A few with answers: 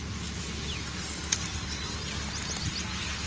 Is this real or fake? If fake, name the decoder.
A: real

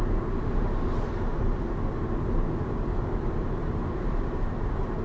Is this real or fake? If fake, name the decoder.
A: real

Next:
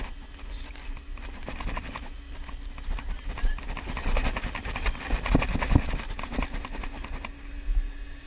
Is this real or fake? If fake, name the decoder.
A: real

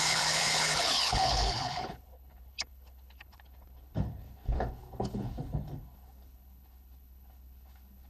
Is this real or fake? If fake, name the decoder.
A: fake, codec, HILCodec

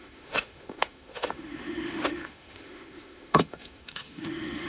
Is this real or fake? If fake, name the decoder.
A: fake, autoencoder, DAC-VAE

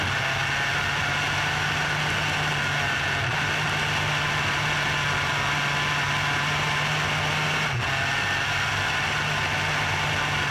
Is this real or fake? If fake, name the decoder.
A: real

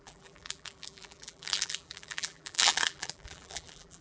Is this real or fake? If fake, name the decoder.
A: fake, vocoder, BigVGAN v2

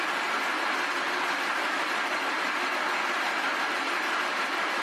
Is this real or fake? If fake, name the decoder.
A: real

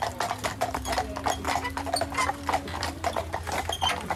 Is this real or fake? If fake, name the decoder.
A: real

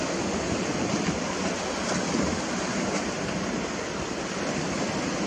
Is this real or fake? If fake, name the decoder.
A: real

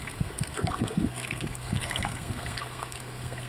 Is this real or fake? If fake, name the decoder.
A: fake, codec, SNAC